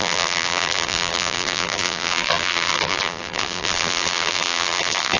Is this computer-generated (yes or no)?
yes